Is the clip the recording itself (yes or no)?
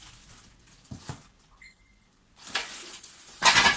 no